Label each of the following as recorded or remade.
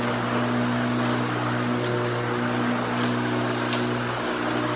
recorded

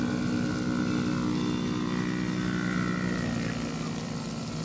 recorded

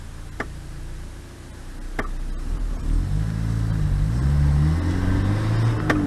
recorded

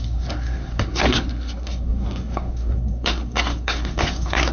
remade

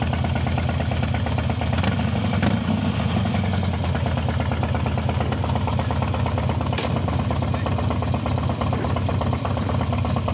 recorded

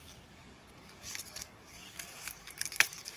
remade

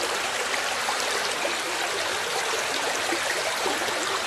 remade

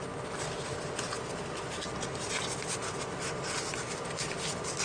recorded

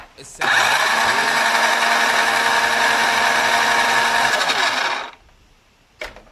recorded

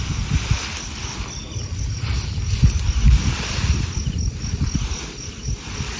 recorded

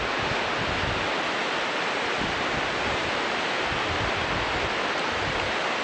recorded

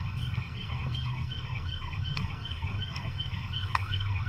remade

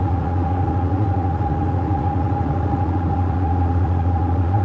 remade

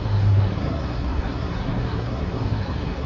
remade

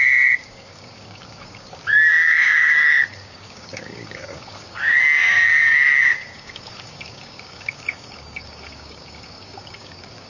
remade